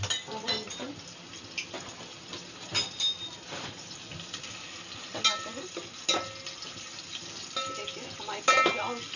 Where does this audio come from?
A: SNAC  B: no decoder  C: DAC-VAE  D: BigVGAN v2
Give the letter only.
B